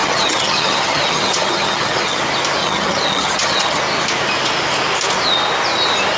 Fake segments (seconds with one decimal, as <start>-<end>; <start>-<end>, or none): 0.0-2.2; 2.6-3.8